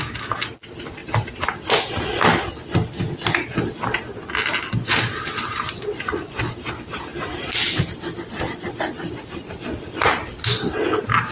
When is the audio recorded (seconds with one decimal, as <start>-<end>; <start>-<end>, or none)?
0.0-11.3